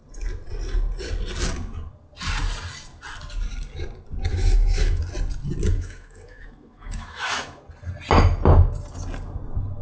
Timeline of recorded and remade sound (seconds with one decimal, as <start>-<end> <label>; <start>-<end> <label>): 0.0-4.3 recorded; 4.3-5.0 remade; 5.0-5.7 recorded; 5.7-7.6 remade; 7.6-9.8 recorded